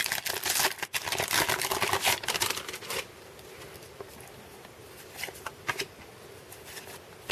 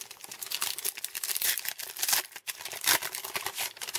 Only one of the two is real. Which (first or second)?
first